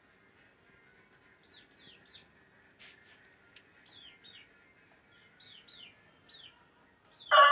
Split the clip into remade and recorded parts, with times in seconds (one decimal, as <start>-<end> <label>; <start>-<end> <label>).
0.0-7.5 recorded